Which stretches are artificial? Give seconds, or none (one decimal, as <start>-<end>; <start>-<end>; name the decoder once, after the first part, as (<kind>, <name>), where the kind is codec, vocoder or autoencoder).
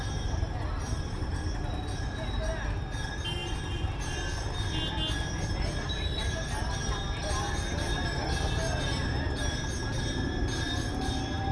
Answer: none